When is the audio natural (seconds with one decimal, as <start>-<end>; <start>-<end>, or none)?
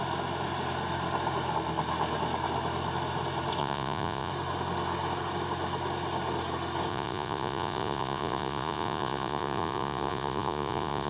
0.0-3.6; 4.3-6.9